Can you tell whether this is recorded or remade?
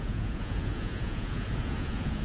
remade